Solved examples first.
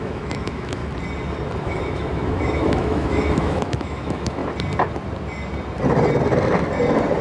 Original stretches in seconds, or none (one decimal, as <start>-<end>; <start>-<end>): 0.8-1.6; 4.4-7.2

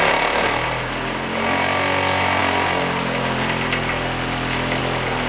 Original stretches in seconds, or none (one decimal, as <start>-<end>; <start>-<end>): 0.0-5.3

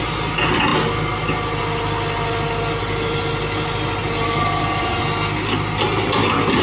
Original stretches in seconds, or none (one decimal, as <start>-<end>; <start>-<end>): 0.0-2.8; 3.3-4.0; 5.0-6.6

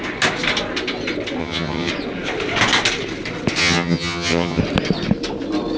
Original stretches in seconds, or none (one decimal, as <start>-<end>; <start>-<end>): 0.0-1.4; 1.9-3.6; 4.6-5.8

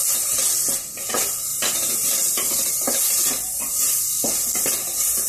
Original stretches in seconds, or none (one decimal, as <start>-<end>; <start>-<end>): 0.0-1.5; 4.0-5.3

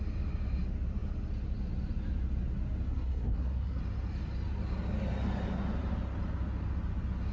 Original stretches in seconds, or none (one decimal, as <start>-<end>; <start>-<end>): 0.0-2.9; 3.8-7.3

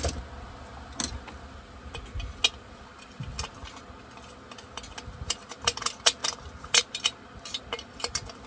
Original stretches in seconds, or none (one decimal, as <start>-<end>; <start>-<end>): 0.0-8.5

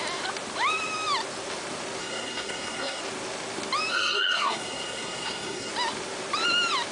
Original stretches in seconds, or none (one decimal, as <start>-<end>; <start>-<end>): 0.0-2.0; 3.0-3.9; 5.7-6.9